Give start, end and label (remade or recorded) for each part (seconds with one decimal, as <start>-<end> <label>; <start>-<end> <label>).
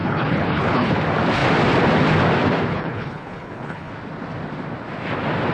0.0-0.9 remade; 0.9-2.7 recorded; 2.7-3.9 remade; 3.9-5.5 recorded